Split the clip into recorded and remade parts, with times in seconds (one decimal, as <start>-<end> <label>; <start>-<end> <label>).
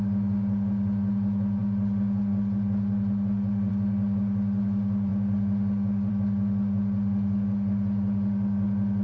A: 0.0-9.0 recorded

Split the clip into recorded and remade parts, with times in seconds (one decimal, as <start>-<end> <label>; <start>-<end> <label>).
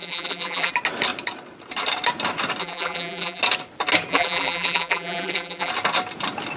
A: 0.0-0.7 remade; 0.7-2.6 recorded; 2.6-3.4 remade; 3.4-4.1 recorded; 4.1-5.7 remade; 5.7-6.6 recorded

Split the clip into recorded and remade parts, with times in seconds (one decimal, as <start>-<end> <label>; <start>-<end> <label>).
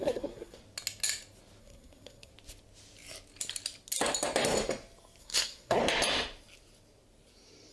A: 0.0-0.6 remade; 0.6-1.6 recorded; 1.6-2.3 remade; 2.3-5.2 recorded; 5.2-5.8 remade; 5.8-7.7 recorded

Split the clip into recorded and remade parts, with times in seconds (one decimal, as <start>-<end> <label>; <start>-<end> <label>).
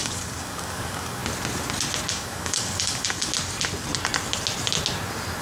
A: 0.0-1.2 remade; 1.2-2.1 recorded; 2.1-3.3 remade; 3.3-5.4 recorded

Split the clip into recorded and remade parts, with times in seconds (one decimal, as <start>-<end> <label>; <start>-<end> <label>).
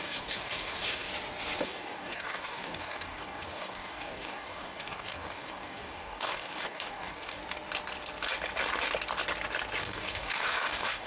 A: 0.0-1.1 remade; 1.1-1.6 recorded; 1.6-7.4 remade; 7.4-9.8 recorded; 9.8-11.1 remade